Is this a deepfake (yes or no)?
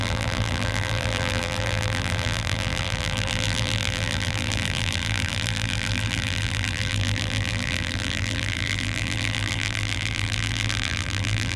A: yes